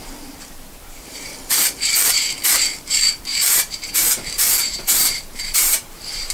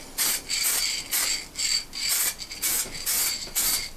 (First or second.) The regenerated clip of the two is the first